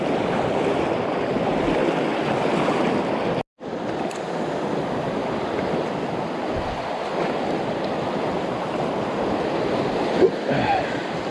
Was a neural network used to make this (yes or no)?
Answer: no